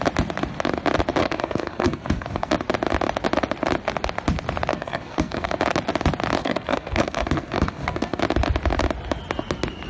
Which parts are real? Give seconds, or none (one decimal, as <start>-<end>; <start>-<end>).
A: 0.0-1.2; 2.5-4.7; 5.6-6.4; 8.2-9.9